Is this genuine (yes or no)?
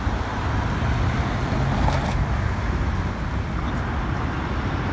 yes